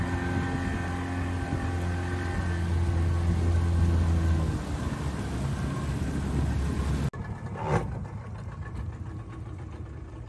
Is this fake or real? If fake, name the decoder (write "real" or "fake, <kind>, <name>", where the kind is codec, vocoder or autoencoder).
real